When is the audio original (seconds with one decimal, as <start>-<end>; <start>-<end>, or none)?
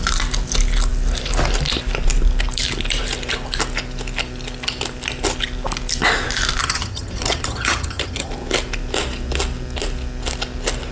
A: 0.0-6.6; 8.3-10.9